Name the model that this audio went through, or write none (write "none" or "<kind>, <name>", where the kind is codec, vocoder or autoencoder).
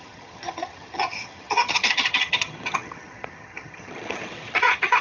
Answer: vocoder, HiFi-GAN